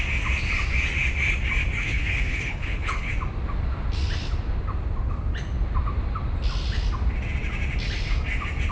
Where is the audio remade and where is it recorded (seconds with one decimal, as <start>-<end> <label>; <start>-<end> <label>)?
0.0-1.8 recorded; 1.8-3.1 remade; 3.1-8.7 recorded